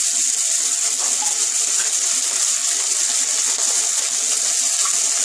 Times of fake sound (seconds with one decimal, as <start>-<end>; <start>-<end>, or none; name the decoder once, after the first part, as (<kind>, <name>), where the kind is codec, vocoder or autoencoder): none